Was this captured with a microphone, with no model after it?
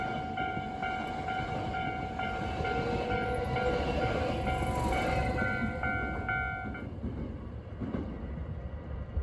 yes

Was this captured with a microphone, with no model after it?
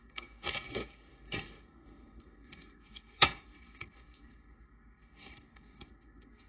no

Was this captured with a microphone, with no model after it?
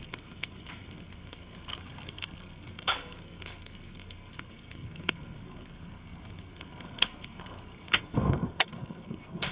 no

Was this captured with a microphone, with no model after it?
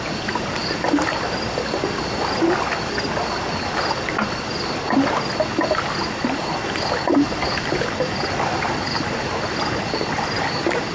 yes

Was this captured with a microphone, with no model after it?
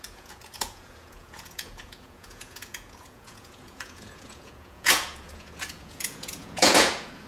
no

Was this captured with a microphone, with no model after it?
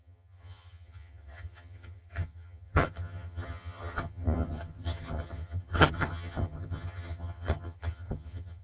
no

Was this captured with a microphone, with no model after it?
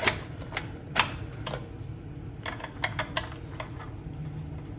yes